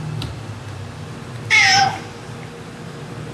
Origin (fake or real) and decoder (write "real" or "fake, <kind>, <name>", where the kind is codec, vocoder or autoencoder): real